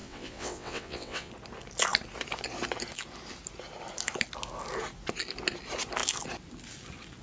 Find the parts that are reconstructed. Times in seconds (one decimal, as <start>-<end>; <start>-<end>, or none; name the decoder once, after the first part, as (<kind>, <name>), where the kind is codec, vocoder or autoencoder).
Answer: 0.0-1.3 (vocoder, WaveNeXt)